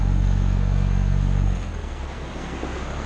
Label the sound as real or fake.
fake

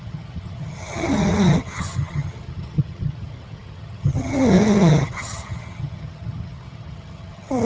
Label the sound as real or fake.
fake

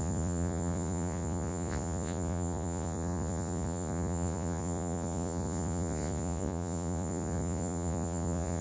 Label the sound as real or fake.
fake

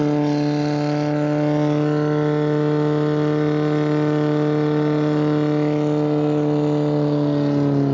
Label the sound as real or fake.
real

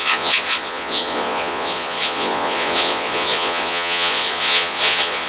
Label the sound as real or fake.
fake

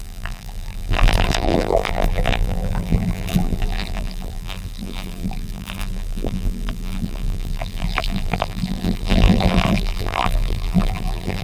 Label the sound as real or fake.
fake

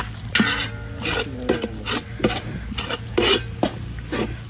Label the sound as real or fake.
real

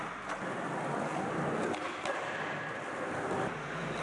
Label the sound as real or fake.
real